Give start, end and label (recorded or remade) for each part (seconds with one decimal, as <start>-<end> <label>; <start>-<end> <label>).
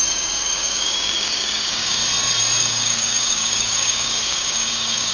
0.0-2.0 remade; 2.0-2.6 recorded; 2.6-5.1 remade